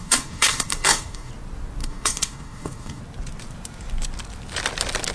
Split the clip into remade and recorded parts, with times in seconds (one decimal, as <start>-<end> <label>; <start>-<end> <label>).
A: 0.0-1.3 remade; 1.3-1.8 recorded; 1.8-3.0 remade; 3.0-5.1 recorded